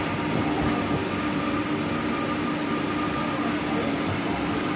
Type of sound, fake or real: real